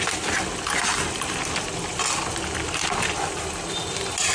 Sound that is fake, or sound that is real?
real